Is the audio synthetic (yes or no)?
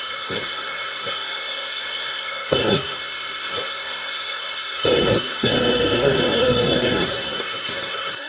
yes